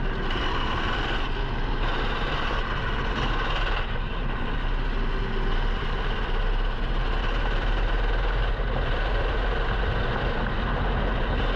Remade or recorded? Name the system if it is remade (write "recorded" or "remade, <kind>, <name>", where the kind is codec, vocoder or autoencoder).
recorded